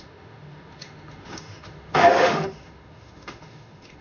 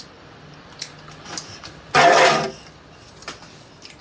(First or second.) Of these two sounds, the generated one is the first